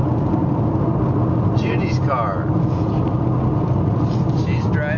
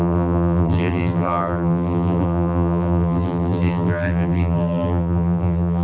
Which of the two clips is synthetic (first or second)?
second